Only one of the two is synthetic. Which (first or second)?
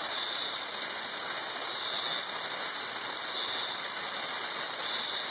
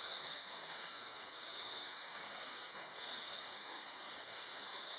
second